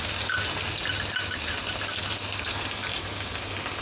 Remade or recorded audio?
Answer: recorded